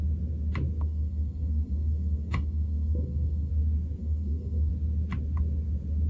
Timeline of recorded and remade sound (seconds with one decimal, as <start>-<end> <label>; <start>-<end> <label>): 0.0-0.8 recorded; 0.8-3.5 remade; 3.5-4.0 recorded; 4.0-4.7 remade; 4.7-6.1 recorded